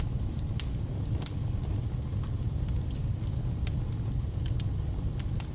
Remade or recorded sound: recorded